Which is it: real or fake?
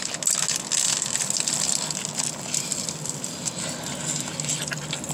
real